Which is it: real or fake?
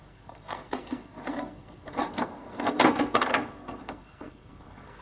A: fake